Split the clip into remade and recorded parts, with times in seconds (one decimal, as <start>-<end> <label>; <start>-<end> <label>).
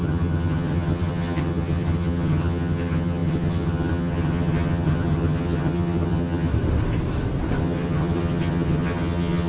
0.0-6.5 remade; 6.5-7.6 recorded; 7.6-9.5 remade